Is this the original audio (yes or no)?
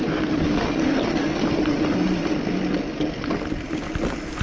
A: yes